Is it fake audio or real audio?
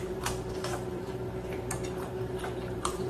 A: fake